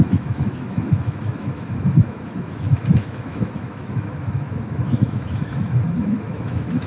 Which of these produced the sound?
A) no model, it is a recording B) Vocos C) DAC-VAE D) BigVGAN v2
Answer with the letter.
C